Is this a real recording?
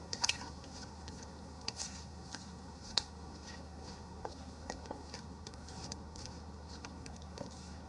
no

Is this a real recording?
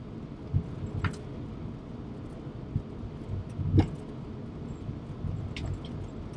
yes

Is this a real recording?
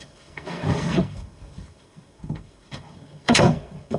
no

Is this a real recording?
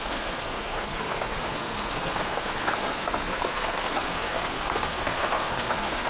no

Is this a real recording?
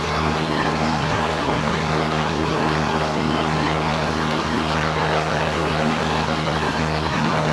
no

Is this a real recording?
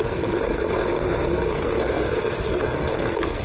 no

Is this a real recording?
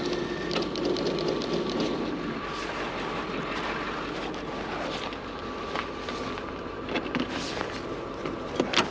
yes